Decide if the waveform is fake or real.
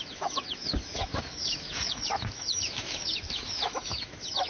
fake